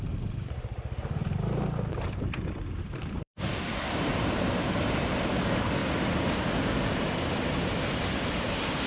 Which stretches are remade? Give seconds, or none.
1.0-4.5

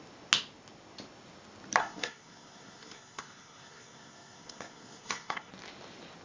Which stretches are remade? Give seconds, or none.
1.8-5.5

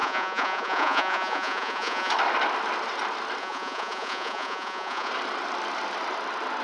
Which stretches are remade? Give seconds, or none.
0.0-2.1; 3.4-5.1

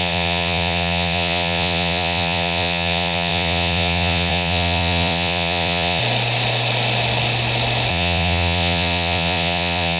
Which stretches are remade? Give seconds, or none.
0.0-6.0; 7.9-10.0

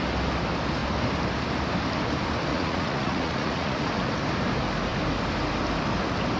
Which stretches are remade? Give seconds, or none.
2.5-3.9

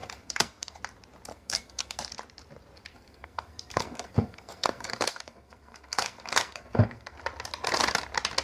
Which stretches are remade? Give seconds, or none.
0.0-0.8; 1.3-2.0; 2.9-7.2

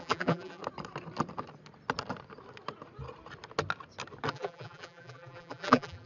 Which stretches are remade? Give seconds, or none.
0.0-0.6; 4.3-6.1